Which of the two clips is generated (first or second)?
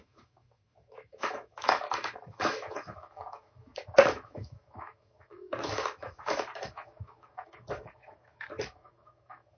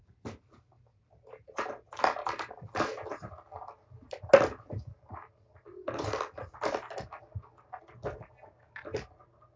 first